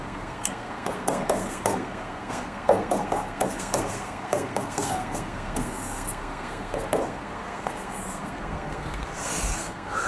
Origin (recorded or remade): remade